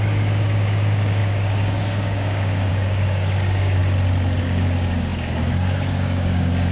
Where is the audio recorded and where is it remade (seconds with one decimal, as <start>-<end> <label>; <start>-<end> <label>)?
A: 0.0-3.8 remade; 3.8-4.4 recorded; 4.4-6.7 remade